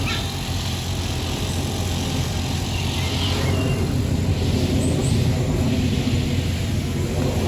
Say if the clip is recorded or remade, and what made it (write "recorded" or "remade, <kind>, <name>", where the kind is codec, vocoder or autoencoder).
recorded